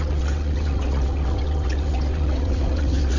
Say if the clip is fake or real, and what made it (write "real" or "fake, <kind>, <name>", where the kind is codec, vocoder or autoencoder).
fake, vocoder, WaveNeXt